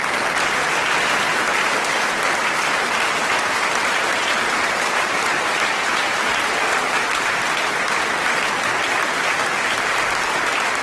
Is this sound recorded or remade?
recorded